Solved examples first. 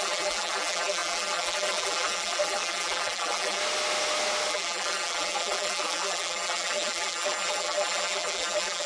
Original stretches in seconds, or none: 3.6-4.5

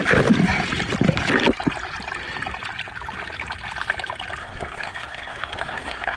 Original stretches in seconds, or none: 0.0-4.4

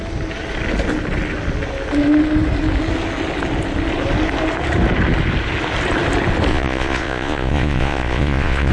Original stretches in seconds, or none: 0.0-6.5

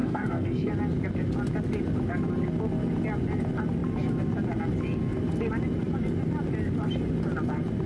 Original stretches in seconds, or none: 0.7-7.9